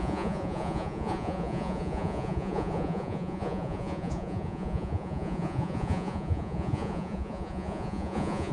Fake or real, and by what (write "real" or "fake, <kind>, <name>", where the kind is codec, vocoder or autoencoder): fake, vocoder, Vocos